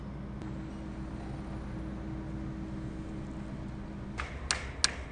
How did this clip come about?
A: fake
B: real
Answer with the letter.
B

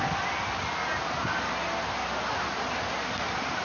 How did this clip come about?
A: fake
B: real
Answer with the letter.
B